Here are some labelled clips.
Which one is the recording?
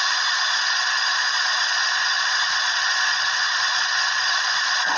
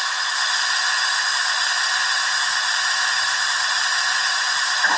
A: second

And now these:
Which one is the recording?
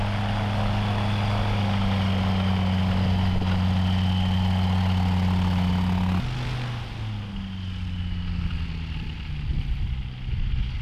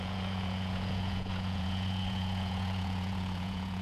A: first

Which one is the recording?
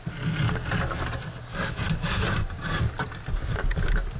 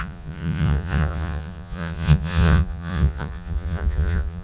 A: first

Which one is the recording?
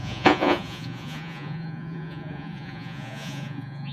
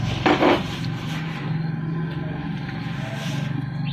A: second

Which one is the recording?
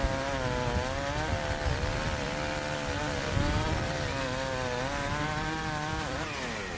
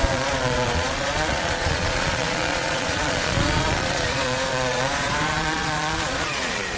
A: first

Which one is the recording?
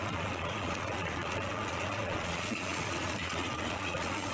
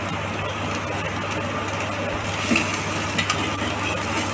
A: second